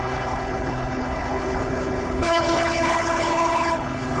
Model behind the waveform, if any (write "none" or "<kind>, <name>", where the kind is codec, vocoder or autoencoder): codec, HILCodec